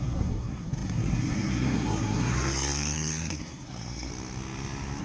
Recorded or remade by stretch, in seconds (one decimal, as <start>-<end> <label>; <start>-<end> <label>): 0.0-4.1 remade; 4.1-5.0 recorded